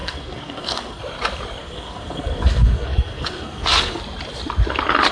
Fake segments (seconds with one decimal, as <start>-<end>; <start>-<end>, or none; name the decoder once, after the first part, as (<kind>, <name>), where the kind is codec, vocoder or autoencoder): 0.0-1.0 (codec, SNAC); 1.6-4.0